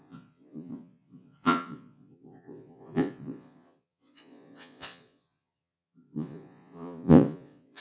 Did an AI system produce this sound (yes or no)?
yes